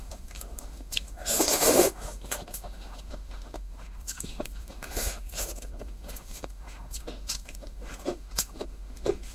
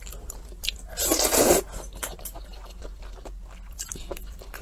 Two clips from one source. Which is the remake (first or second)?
first